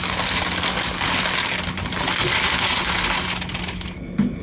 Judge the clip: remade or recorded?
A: recorded